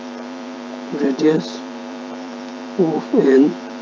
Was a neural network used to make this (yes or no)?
yes